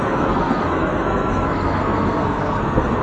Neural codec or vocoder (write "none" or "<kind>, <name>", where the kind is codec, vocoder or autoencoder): codec, SNAC